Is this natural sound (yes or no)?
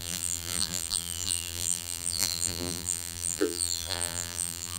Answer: no